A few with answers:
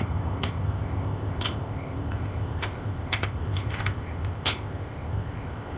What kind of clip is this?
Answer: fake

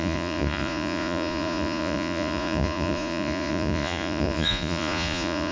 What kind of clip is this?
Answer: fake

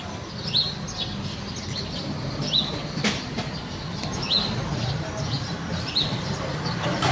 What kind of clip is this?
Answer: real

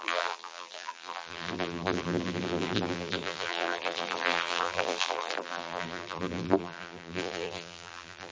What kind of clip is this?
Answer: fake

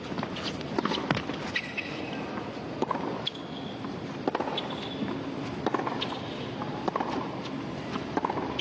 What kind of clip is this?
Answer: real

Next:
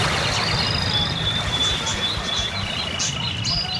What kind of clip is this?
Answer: real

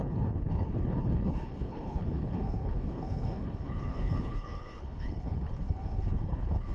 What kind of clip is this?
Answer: fake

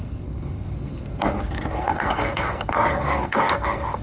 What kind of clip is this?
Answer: fake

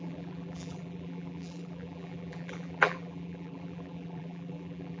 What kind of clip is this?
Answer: fake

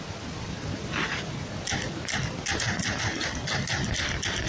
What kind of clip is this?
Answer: real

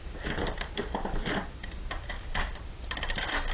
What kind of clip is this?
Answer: real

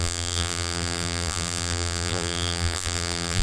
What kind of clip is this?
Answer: fake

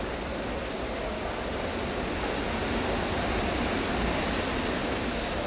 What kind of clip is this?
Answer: real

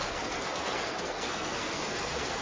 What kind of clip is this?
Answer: fake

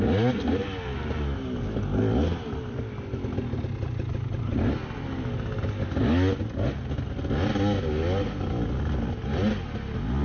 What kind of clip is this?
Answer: real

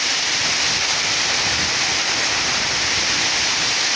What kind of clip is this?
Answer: real